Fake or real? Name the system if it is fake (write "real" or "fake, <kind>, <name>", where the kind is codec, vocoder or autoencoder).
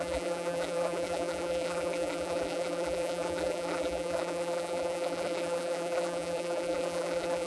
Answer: fake, vocoder, BigVGAN v2